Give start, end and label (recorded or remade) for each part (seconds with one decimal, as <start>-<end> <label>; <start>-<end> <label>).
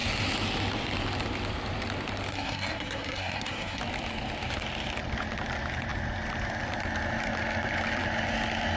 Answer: 0.0-2.3 recorded; 2.3-3.8 remade; 3.8-8.8 recorded